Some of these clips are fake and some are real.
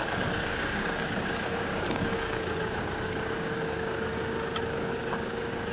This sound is fake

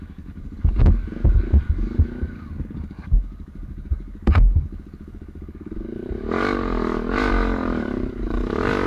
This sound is fake